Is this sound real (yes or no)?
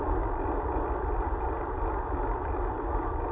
yes